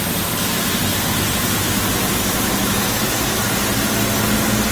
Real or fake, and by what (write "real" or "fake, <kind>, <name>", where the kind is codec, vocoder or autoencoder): real